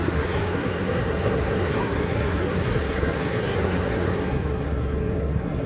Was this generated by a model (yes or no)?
yes